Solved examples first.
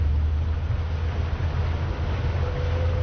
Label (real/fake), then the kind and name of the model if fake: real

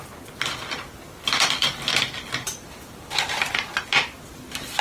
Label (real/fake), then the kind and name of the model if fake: real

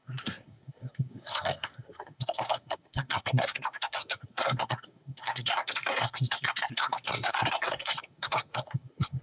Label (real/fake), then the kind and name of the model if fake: fake, codec, SNAC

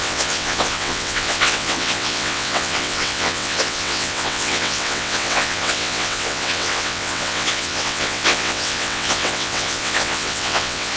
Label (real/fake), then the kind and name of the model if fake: fake, vocoder, WaveNeXt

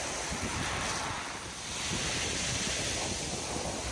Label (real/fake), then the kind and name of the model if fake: real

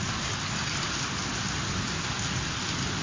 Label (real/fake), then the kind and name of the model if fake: real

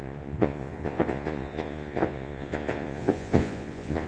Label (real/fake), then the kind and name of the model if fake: fake, vocoder, Vocos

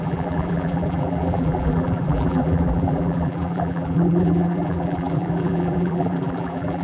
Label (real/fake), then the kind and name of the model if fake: fake, vocoder, BigVGAN v2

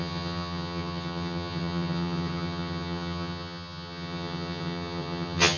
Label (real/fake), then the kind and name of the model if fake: fake, vocoder, HiFi-GAN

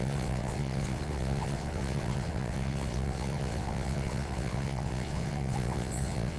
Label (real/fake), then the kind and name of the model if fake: fake, vocoder, WaveNeXt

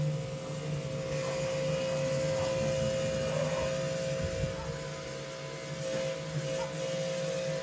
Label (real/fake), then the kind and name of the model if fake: real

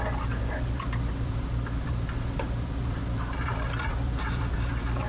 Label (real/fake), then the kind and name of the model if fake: fake, vocoder, BigVGAN v2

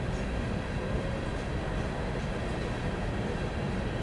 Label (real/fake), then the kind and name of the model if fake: real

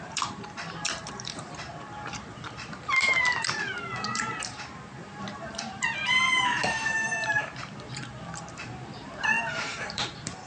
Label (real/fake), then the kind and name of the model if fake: fake, vocoder, BigVGAN v2